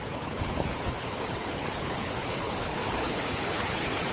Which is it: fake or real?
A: fake